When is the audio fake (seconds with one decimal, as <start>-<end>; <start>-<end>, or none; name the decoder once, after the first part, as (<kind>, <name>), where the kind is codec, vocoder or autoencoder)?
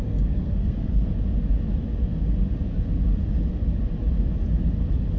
0.0-1.1 (codec, SNAC)